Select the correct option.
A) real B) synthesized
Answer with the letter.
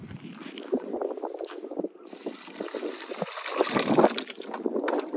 A